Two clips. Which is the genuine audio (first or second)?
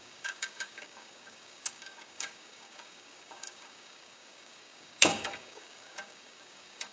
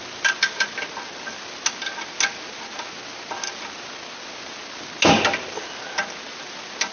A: second